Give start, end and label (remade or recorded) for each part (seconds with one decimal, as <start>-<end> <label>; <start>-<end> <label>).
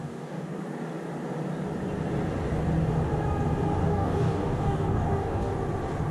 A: 0.0-0.6 remade; 0.6-3.8 recorded; 3.8-5.5 remade; 5.5-6.1 recorded